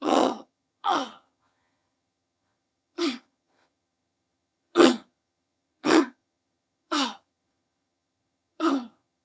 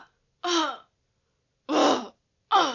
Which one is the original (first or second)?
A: second